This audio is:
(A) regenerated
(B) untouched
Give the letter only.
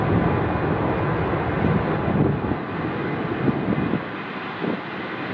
B